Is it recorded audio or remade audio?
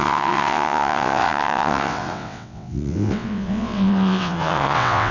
remade